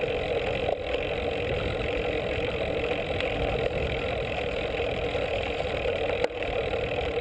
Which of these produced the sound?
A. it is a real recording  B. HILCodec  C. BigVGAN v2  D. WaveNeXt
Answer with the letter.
A